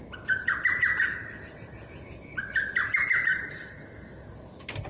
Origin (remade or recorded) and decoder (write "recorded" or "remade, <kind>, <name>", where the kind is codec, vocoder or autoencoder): recorded